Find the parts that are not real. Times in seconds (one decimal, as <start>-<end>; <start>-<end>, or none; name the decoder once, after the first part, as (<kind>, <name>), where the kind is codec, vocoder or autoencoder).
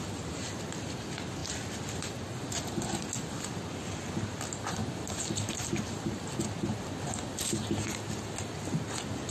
none